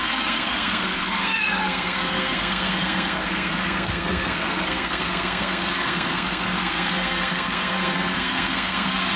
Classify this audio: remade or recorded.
remade